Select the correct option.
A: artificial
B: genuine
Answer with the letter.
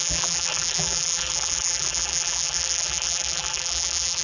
A